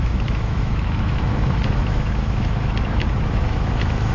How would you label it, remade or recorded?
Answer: remade